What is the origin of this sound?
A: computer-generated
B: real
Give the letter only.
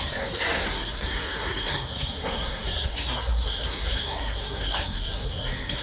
A